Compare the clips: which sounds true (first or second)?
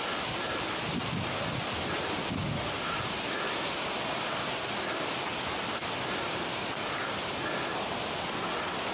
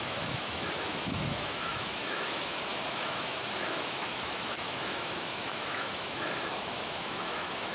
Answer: first